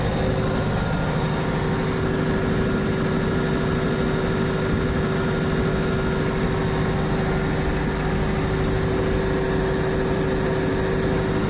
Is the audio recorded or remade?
recorded